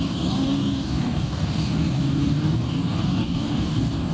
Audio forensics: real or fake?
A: fake